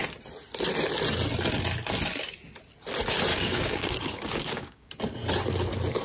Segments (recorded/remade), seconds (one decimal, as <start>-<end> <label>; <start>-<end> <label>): 0.0-3.3 recorded; 3.3-4.9 remade; 4.9-6.0 recorded